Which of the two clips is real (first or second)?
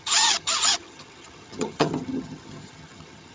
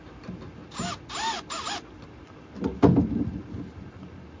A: second